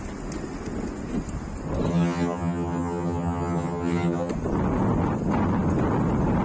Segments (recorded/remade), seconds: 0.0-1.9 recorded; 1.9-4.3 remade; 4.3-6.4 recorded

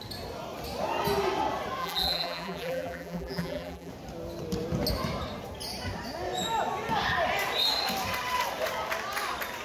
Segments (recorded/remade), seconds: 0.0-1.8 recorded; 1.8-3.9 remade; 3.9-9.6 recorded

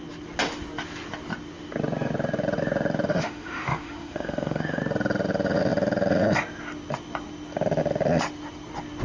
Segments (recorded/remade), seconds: 0.0-3.1 recorded; 3.1-4.8 remade; 4.8-9.0 recorded

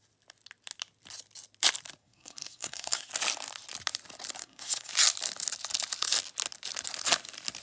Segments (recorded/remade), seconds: 0.0-2.0 recorded; 2.0-3.1 remade; 3.1-4.4 recorded; 4.4-4.9 remade; 4.9-7.6 recorded

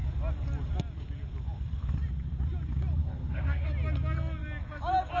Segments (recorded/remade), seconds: 0.0-3.0 recorded; 3.0-3.7 remade; 3.7-5.2 recorded

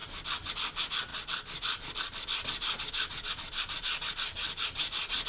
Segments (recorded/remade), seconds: 0.0-5.3 recorded